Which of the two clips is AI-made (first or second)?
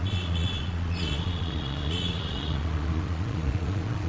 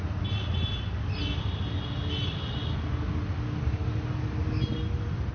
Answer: first